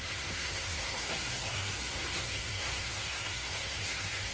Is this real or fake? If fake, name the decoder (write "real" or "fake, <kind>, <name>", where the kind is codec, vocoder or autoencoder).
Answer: fake, codec, SNAC